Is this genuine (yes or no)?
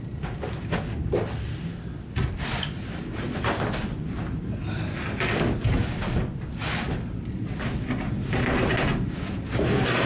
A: yes